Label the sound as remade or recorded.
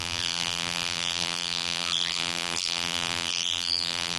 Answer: remade